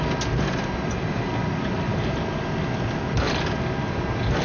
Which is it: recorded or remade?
recorded